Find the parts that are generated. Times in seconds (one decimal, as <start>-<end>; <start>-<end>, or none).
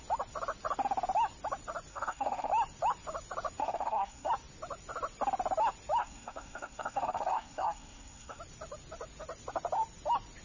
1.9-2.5; 3.6-4.3; 6.0-8.4